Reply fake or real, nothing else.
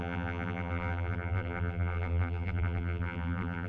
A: fake